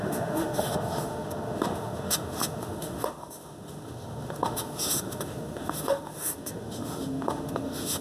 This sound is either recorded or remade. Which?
remade